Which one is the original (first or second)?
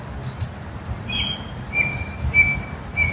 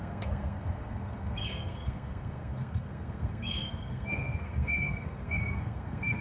first